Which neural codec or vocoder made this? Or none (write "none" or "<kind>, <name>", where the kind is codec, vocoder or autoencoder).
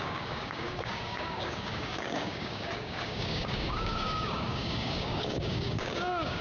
codec, DAC